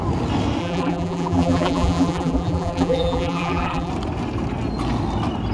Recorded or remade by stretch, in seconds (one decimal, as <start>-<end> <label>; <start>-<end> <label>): 0.0-0.6 recorded; 0.6-3.9 remade; 3.9-5.5 recorded